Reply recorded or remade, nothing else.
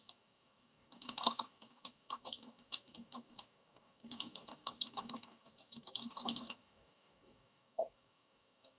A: remade